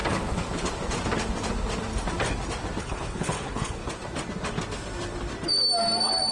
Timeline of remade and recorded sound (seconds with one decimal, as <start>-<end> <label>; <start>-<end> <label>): 0.0-2.8 recorded; 2.8-3.8 remade; 3.8-6.3 recorded